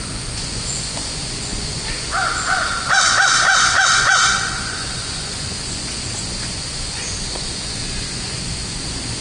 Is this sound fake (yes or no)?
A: yes